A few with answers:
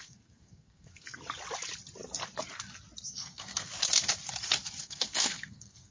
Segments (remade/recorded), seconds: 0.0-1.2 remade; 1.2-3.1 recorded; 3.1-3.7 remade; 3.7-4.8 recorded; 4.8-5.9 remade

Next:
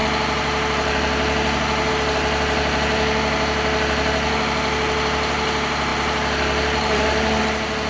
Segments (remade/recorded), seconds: 0.0-7.9 recorded

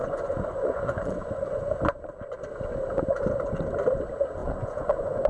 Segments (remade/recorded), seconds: 0.0-1.8 remade; 1.8-4.4 recorded; 4.4-5.3 remade

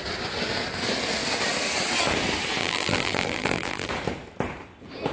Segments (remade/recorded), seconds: 0.0-2.6 recorded; 2.6-3.9 remade; 3.9-5.1 recorded